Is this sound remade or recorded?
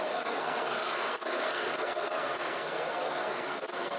remade